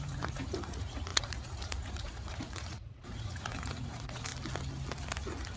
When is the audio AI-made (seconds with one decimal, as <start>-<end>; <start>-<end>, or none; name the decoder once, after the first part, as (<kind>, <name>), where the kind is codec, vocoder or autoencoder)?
0.0-4.3 (vocoder, Vocos)